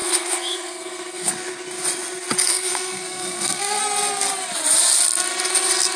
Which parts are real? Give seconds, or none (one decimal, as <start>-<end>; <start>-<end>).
1.3-2.5; 3.8-6.0